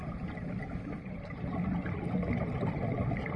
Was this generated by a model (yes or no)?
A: no